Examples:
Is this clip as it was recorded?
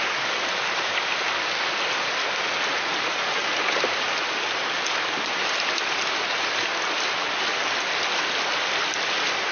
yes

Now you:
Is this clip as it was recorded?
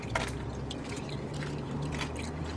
no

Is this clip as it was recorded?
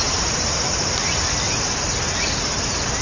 no